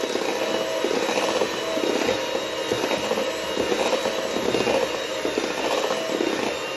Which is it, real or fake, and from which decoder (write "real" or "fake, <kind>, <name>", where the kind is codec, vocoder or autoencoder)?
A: real